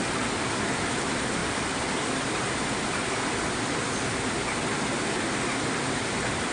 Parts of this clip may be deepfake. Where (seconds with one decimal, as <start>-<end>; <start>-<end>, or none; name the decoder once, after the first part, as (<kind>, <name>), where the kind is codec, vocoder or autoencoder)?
1.4-2.2 (vocoder, BigVGAN v2)

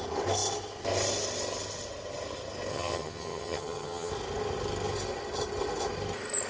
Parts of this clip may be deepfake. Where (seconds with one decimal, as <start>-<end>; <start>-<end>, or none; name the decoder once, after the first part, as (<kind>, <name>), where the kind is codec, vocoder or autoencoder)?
2.7-4.1 (vocoder, HiFi-GAN)

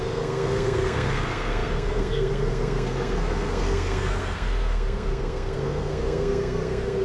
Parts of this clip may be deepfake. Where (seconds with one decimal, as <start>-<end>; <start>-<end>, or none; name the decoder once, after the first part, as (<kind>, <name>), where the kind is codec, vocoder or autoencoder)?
0.0-7.0 (codec, SNAC)

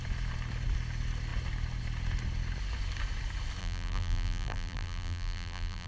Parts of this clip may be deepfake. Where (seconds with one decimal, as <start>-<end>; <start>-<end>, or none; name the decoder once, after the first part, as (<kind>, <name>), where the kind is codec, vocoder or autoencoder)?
3.6-5.9 (vocoder, BigVGAN v2)